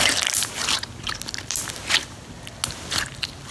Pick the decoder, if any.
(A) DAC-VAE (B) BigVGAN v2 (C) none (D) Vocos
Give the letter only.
C